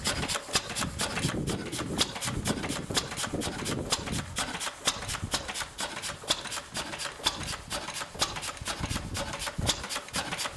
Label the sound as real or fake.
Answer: real